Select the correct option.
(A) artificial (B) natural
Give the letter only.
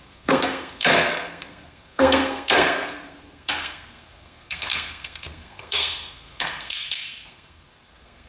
A